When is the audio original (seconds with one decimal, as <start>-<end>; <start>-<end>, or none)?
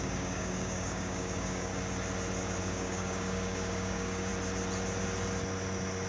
1.7-2.6; 4.3-6.1